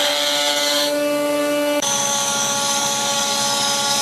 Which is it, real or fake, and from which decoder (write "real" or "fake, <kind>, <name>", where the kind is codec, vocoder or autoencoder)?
fake, codec, DAC